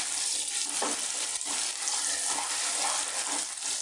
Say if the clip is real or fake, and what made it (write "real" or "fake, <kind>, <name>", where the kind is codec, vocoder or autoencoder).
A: real